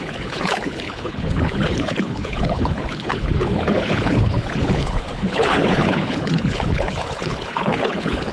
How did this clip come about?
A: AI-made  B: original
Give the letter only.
A